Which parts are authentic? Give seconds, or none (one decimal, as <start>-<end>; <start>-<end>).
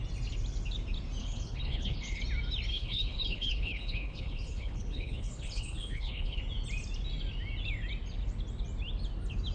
0.0-1.2; 2.2-2.7; 6.4-9.5